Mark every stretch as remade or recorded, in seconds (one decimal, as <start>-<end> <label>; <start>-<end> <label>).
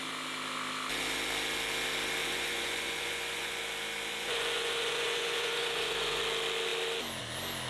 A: 0.0-2.2 recorded; 2.2-3.6 remade; 3.6-4.1 recorded; 4.1-6.2 remade; 6.2-7.7 recorded